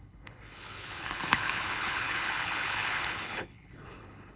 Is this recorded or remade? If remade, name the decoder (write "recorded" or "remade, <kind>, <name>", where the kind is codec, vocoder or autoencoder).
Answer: remade, codec, HILCodec